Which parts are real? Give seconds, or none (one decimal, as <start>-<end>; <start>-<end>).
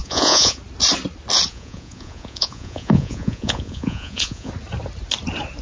0.6-1.5; 4.5-5.6